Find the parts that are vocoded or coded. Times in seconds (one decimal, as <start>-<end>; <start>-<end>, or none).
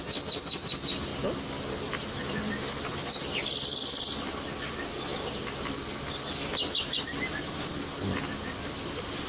3.7-4.6